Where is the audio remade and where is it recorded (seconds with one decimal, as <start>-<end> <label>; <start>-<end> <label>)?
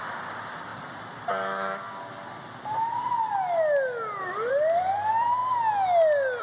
0.0-0.7 remade; 0.7-4.5 recorded; 4.5-5.4 remade; 5.4-6.4 recorded